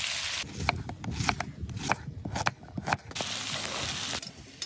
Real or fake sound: real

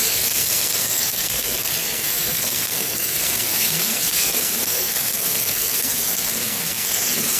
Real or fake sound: fake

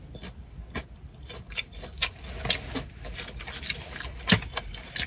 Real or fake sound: real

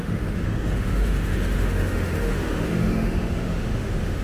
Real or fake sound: fake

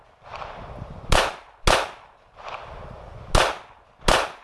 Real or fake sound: real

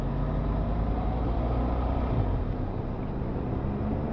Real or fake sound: real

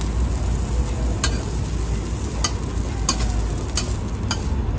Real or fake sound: real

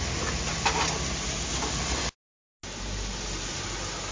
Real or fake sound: real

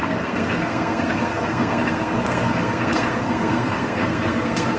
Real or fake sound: fake